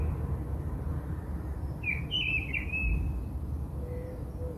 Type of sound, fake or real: real